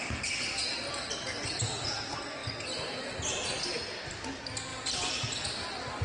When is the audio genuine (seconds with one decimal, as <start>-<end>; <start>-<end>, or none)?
0.0-4.7; 5.5-6.0